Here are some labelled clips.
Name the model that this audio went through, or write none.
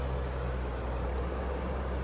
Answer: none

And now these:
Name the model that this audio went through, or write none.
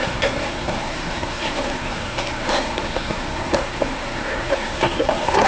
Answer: codec, SNAC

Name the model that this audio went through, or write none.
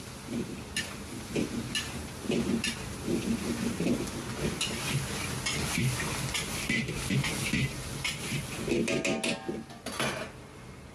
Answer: none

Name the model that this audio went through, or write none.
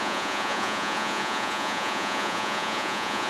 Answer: vocoder, Vocos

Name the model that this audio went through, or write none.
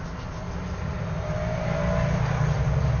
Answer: none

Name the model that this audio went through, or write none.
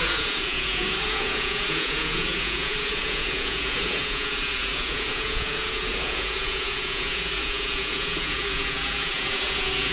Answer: vocoder, Vocos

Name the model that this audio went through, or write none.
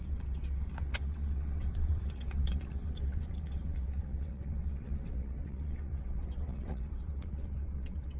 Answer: vocoder, WaveNeXt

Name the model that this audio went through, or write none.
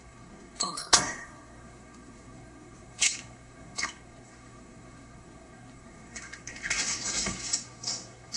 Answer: codec, SNAC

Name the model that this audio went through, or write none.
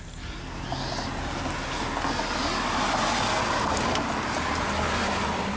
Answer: none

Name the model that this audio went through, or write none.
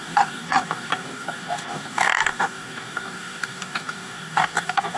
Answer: codec, DAC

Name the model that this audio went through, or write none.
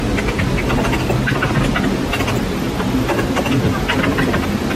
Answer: none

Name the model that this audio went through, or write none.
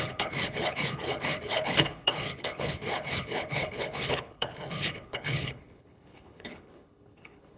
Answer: codec, HILCodec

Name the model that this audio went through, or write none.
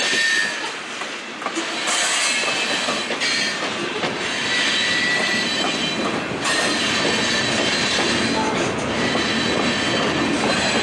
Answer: none